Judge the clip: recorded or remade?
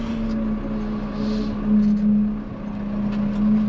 recorded